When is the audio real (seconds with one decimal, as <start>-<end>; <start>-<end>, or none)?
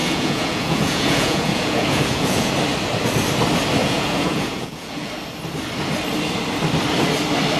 2.5-3.8; 5.1-7.6